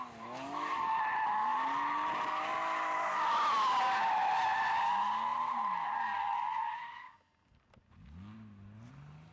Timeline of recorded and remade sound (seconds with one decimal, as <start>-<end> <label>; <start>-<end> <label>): 0.0-9.3 recorded